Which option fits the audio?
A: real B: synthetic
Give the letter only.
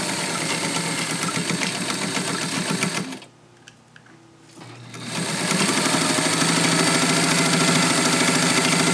A